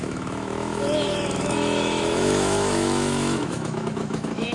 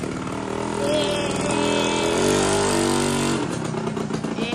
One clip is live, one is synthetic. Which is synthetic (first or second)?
first